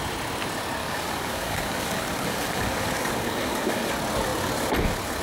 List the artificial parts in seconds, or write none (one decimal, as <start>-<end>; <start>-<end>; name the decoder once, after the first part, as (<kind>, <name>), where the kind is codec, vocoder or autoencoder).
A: 0.8-3.9 (codec, DAC)